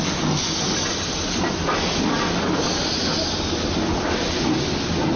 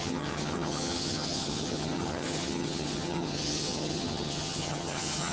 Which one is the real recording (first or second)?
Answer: first